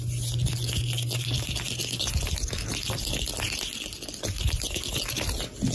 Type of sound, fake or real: real